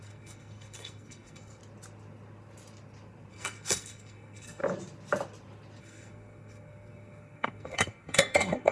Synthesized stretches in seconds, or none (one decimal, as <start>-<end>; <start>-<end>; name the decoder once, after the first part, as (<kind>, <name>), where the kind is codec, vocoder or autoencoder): 0.0-1.6 (codec, SNAC); 3.3-4.6; 5.8-8.7